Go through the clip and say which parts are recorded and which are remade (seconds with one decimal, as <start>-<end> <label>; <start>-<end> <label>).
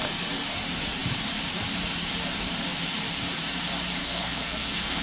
0.0-4.0 recorded; 4.0-5.0 remade